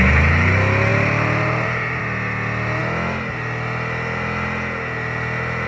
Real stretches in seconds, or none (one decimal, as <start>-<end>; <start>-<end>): 0.0-0.9; 2.0-5.7